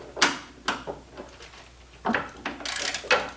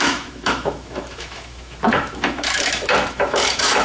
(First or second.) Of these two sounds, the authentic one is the first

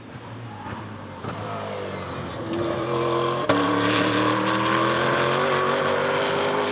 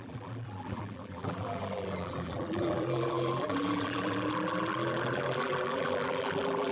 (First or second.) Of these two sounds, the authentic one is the first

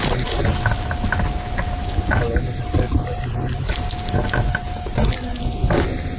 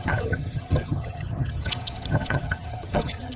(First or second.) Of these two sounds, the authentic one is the first